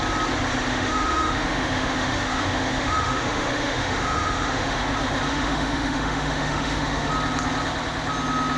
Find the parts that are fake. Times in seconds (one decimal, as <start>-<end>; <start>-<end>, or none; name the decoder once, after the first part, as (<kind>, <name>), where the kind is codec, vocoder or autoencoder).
0.7-4.8 (autoencoder, DAC-VAE); 5.3-7.1